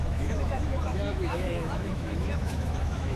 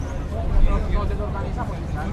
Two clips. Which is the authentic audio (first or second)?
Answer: second